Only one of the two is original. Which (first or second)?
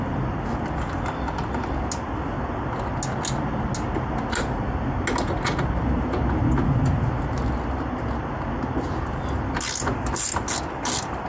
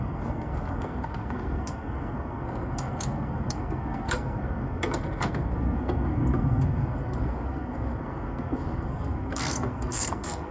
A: first